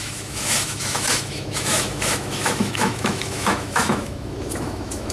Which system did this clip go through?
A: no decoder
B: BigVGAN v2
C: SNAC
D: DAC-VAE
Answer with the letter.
D